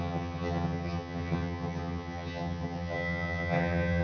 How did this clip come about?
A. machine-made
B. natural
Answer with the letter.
A